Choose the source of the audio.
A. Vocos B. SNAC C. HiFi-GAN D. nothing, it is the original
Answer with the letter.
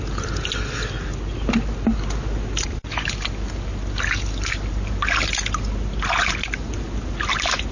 D